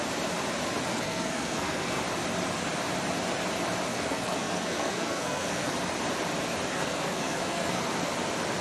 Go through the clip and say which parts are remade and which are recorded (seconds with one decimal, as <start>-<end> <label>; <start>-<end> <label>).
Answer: 0.0-0.9 recorded; 0.9-2.0 remade; 2.0-3.9 recorded; 3.9-5.7 remade; 5.7-6.7 recorded; 6.7-7.8 remade; 7.8-8.6 recorded